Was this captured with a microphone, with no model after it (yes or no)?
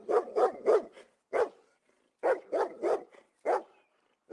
yes